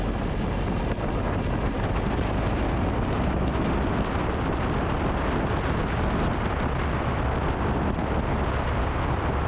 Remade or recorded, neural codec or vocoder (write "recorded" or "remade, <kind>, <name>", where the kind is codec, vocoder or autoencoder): recorded